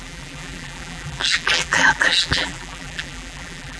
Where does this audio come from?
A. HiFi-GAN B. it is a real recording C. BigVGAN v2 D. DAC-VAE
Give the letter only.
C